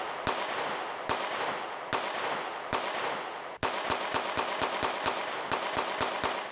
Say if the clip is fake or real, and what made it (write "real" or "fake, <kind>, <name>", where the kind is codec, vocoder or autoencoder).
real